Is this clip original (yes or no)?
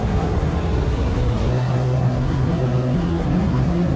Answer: no